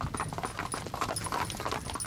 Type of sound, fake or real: real